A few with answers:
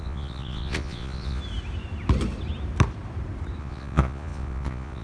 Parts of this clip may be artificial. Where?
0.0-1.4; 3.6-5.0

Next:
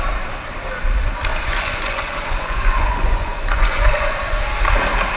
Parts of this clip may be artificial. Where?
1.3-4.4

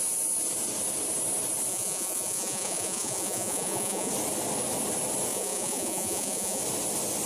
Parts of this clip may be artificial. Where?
1.7-4.1; 5.3-6.6

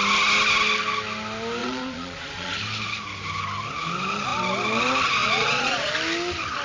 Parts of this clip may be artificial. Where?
1.6-2.5; 5.2-5.9